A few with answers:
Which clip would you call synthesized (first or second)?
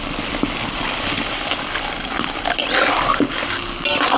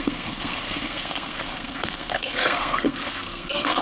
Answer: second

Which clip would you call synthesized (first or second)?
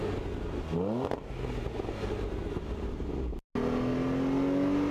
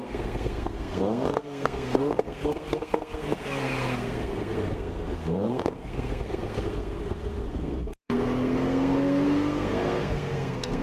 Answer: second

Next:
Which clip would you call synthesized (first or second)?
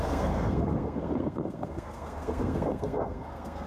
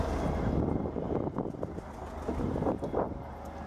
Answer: first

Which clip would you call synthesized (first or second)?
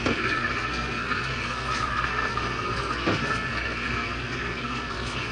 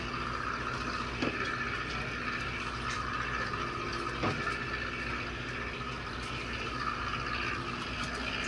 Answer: first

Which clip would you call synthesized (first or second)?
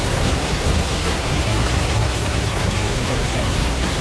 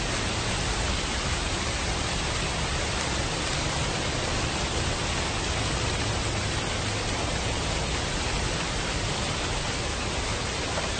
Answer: first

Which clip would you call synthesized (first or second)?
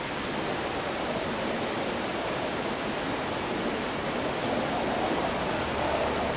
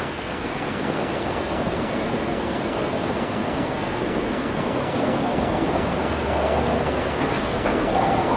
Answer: second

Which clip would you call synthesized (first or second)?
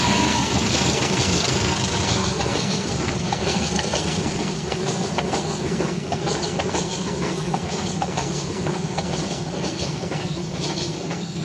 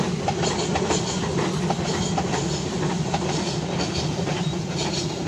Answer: first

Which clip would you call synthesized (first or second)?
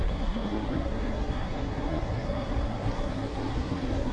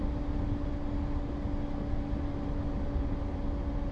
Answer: first